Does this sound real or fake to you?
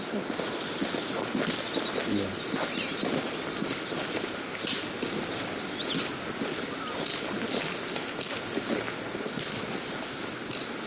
real